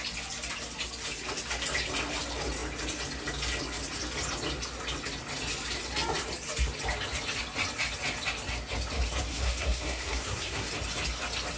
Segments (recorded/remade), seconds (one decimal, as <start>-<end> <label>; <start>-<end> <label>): 0.0-9.3 recorded; 9.3-10.7 remade; 10.7-11.6 recorded